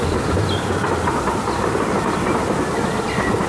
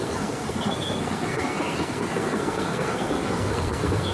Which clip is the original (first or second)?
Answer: first